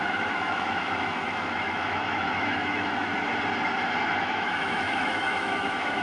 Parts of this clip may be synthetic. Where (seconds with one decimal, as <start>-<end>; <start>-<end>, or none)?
0.0-3.1; 4.2-6.0